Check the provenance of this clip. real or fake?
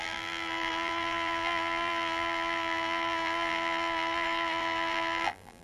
fake